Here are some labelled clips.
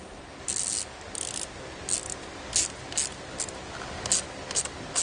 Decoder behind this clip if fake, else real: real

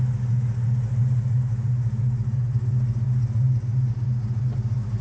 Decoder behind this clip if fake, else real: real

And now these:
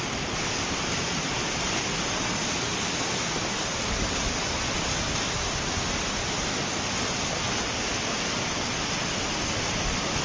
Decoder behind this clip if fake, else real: real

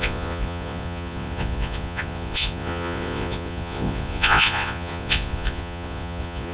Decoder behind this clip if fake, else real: fake, vocoder, Vocos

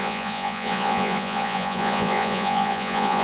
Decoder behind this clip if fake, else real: fake, vocoder, Vocos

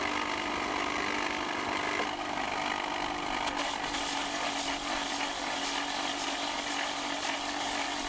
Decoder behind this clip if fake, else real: real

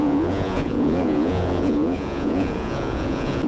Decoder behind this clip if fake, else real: fake, vocoder, Vocos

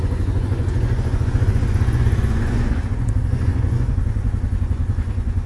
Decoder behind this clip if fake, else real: fake, vocoder, Vocos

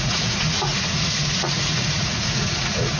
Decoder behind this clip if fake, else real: fake, vocoder, Vocos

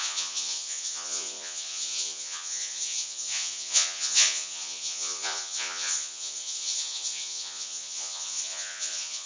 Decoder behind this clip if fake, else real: fake, vocoder, Vocos